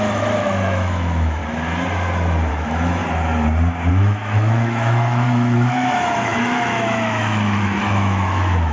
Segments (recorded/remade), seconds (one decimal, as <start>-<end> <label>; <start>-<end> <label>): 0.0-1.4 remade; 1.4-2.5 recorded; 2.5-3.0 remade; 3.0-3.9 recorded; 3.9-8.7 remade